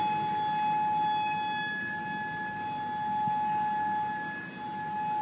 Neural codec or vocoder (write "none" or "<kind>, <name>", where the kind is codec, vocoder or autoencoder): none